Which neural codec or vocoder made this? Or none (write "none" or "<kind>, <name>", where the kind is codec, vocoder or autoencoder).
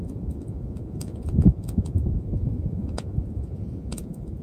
vocoder, Vocos